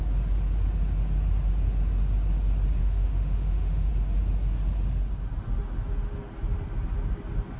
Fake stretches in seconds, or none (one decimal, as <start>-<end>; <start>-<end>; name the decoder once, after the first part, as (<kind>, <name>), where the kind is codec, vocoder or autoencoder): 2.8-3.9 (autoencoder, DAC-VAE)

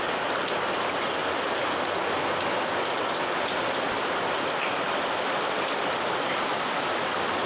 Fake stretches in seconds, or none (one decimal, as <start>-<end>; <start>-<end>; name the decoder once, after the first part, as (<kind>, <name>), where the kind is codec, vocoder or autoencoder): none

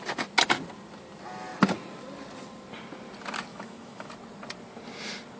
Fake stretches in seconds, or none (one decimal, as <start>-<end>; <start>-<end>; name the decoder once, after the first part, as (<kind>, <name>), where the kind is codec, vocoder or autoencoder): 3.5-4.1 (autoencoder, DAC-VAE)

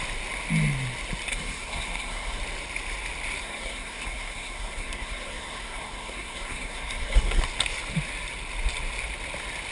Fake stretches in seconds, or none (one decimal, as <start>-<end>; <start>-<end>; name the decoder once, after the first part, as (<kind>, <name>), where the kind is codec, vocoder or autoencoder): 1.3-2.4 (codec, SNAC); 3.4-7.4

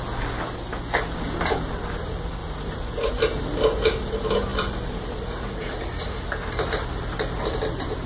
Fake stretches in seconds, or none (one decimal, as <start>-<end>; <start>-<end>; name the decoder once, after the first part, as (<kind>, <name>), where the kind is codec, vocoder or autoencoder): 2.4-3.1 (vocoder, Vocos)

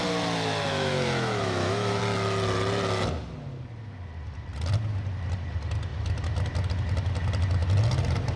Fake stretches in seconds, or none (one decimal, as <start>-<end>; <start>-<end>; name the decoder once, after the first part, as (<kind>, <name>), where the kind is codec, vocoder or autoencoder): 0.7-2.0 (autoencoder, DAC-VAE)

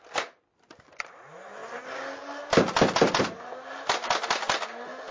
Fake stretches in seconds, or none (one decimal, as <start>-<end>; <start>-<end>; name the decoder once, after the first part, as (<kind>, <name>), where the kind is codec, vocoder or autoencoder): none